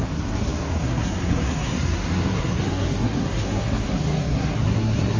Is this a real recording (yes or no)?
no